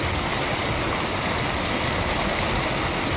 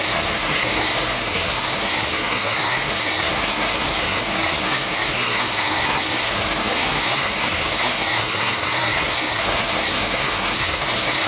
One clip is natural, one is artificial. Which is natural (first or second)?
first